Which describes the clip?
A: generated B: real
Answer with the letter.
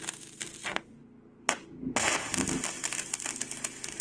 B